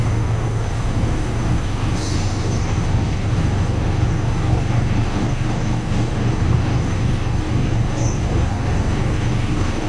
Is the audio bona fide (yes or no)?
no